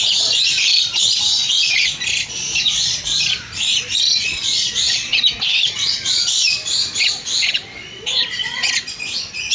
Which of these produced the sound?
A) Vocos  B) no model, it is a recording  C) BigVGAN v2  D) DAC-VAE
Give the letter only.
A